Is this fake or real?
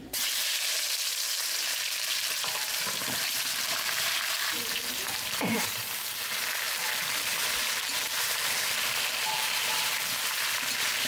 fake